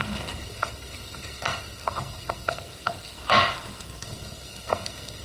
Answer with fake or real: fake